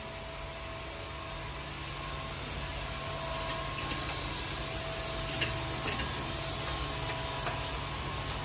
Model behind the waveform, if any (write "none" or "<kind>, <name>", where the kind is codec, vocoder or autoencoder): none